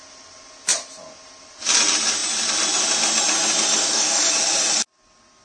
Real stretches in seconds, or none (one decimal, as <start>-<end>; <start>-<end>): 0.0-3.8; 4.3-5.4